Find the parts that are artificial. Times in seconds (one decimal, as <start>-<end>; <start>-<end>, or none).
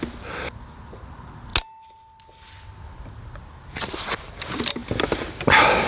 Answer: none